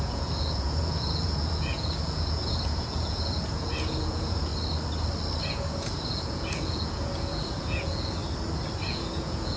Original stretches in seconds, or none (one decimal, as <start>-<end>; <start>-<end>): 4.5-5.4; 8.2-8.9